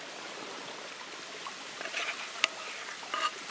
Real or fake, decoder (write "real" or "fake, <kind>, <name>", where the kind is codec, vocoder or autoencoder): real